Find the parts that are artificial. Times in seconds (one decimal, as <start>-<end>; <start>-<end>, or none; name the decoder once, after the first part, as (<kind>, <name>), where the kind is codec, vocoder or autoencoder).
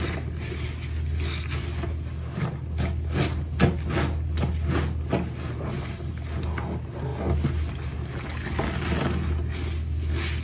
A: none